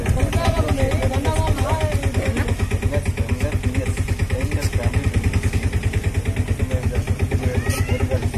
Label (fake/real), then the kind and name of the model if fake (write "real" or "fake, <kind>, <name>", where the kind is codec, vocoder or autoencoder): real